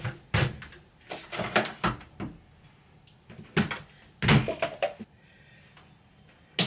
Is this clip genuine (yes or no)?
yes